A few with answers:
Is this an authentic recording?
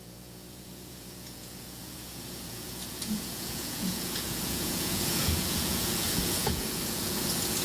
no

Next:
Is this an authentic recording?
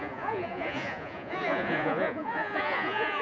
no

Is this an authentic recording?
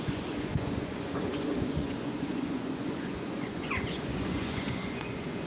no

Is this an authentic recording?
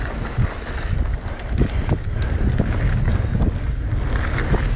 yes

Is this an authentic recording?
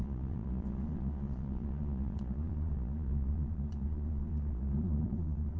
no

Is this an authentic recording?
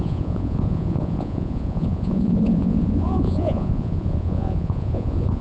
no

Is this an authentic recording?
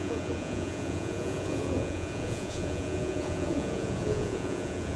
no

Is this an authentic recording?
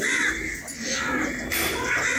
yes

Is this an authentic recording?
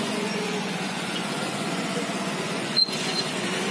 no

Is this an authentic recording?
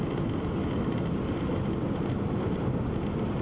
yes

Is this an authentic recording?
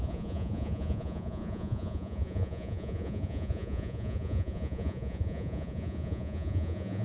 no